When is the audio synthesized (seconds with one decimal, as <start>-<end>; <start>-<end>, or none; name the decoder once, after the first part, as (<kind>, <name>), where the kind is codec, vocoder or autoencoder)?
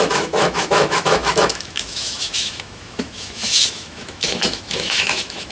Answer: 0.0-5.5 (autoencoder, DAC-VAE)